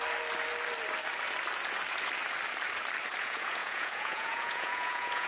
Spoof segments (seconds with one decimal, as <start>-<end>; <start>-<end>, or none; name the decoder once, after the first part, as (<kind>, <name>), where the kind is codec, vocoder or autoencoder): 3.2-5.3 (vocoder, Vocos)